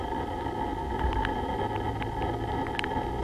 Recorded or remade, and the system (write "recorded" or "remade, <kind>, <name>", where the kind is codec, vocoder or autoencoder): recorded